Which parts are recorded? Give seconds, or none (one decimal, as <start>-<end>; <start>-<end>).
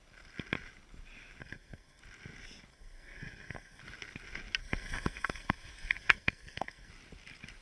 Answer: 0.0-1.4; 2.0-2.7; 3.8-4.6; 6.9-7.6